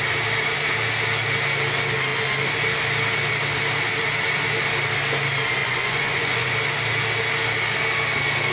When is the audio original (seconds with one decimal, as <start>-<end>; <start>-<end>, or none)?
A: 0.0-5.6; 6.5-8.5